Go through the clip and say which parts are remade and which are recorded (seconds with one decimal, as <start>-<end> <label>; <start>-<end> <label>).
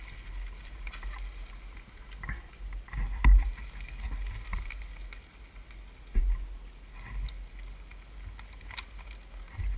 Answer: 0.0-9.8 recorded